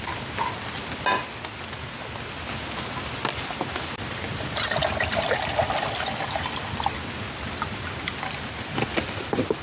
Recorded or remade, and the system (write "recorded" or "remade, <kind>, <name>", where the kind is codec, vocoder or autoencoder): recorded